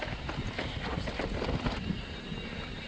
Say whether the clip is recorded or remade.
recorded